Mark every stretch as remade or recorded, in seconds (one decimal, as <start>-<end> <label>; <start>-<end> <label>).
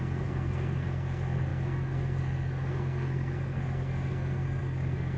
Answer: 0.0-5.2 remade